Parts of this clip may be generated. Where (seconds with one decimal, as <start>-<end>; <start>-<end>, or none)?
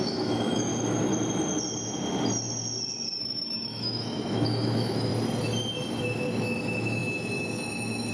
0.0-0.7; 3.2-5.1; 6.0-8.1